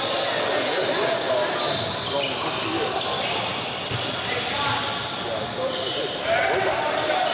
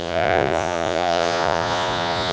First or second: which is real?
first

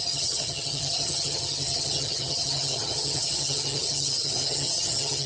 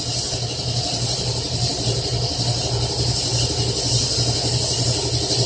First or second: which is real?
second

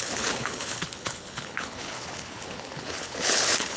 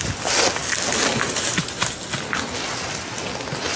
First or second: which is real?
second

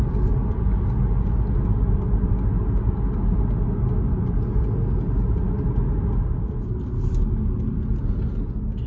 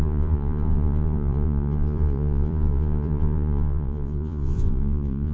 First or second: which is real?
first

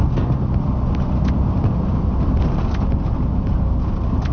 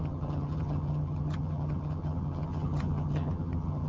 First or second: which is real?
first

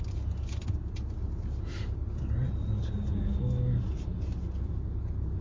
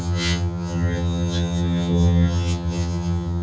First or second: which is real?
first